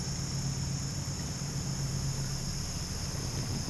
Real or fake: real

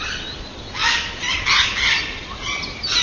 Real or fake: fake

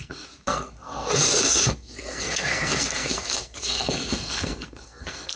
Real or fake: fake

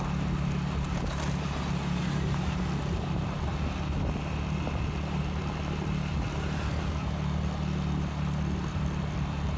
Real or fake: real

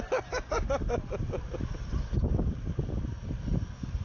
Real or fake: real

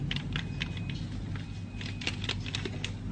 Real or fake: real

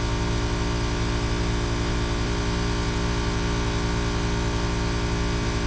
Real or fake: real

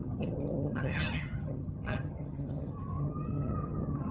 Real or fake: fake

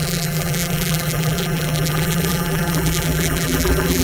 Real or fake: fake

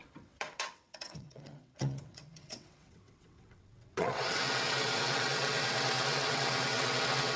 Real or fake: fake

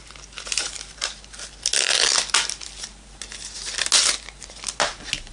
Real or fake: real